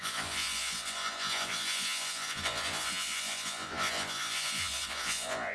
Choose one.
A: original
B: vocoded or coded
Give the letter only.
B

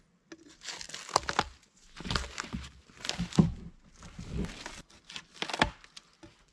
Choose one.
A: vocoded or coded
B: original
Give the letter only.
B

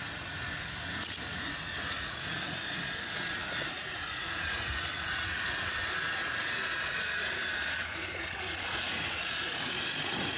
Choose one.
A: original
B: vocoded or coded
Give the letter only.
B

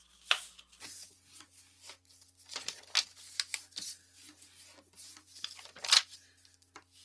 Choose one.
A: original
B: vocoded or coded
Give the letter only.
A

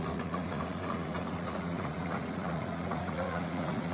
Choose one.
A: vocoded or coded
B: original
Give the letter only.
A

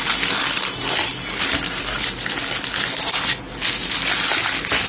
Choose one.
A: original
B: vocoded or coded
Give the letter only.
A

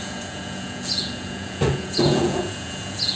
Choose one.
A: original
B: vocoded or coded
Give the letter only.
B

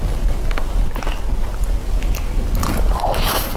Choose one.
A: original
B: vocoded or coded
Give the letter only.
A